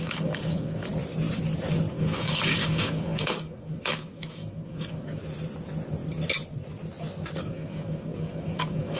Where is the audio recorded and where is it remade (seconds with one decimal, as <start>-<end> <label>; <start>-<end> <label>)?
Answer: 0.0-0.9 remade; 0.9-1.9 recorded; 1.9-5.2 remade; 5.2-7.4 recorded; 7.4-9.0 remade